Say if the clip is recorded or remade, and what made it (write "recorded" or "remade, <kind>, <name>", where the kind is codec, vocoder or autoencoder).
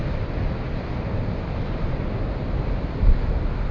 recorded